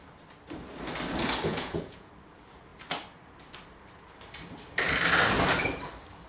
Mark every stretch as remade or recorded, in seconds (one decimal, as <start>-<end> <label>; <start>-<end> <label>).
0.0-1.5 recorded; 1.5-2.1 remade; 2.1-6.3 recorded